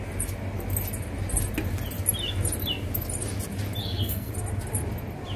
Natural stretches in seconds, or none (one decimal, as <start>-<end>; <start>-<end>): 0.0-3.8; 4.3-5.4